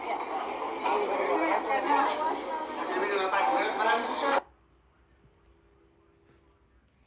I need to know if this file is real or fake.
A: real